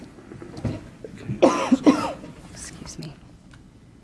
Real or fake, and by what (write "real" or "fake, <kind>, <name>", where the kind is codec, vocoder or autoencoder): real